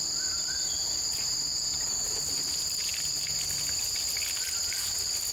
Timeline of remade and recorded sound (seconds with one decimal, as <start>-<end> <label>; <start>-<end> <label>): 0.0-1.5 recorded; 1.5-2.2 remade; 2.2-5.3 recorded

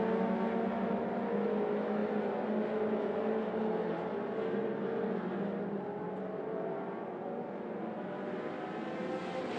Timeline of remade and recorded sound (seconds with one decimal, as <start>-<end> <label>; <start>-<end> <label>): 0.0-9.6 recorded

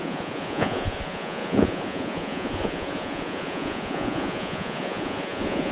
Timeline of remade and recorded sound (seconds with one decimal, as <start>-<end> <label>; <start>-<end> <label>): 0.0-5.7 remade

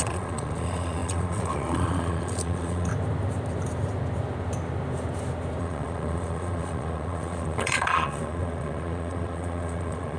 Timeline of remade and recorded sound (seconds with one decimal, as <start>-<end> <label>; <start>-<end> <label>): 0.0-2.9 remade; 2.9-5.6 recorded; 5.6-10.2 remade

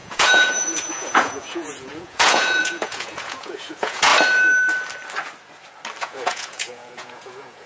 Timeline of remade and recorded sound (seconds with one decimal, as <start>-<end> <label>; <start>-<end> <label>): 0.0-4.1 remade; 4.1-6.0 recorded; 6.0-7.7 remade

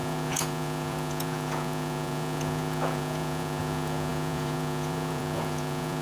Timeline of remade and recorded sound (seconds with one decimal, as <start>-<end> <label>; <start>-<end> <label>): 0.0-6.0 remade

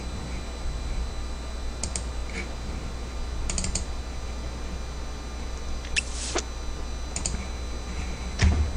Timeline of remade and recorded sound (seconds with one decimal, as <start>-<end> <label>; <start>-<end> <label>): 0.0-8.8 recorded

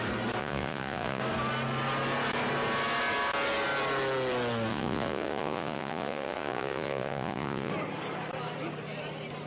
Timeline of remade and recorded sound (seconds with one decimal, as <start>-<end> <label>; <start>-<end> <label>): 0.0-0.4 recorded; 0.4-1.2 remade; 1.2-4.7 recorded; 4.7-7.7 remade; 7.7-9.5 recorded